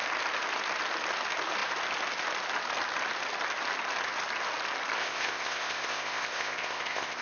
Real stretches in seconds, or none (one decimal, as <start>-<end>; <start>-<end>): 0.0-5.0